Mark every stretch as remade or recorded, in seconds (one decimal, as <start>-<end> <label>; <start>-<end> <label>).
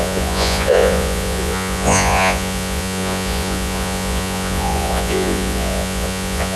0.0-6.6 remade